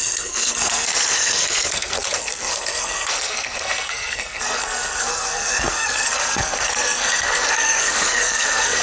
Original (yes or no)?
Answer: no